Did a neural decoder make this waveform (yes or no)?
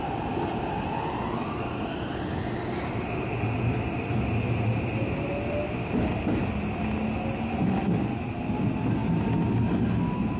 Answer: no